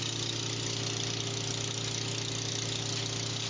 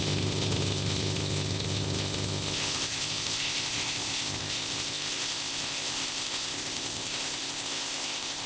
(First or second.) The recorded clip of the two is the first